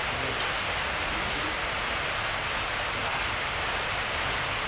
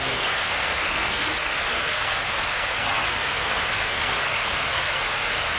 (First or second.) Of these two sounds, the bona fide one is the first